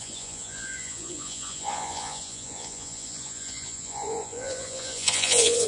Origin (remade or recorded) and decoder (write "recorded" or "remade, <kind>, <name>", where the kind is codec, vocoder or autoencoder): remade, vocoder, Vocos